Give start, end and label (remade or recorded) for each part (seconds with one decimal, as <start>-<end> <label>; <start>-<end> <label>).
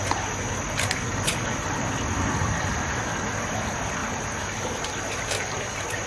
0.0-1.1 recorded; 1.1-1.9 remade; 1.9-4.0 recorded; 4.0-4.8 remade; 4.8-6.1 recorded